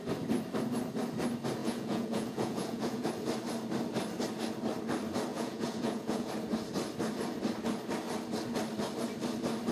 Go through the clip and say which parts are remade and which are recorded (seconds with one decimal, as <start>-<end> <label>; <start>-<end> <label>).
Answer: 0.0-1.6 recorded; 1.6-3.1 remade; 3.1-5.3 recorded; 5.3-6.3 remade; 6.3-9.7 recorded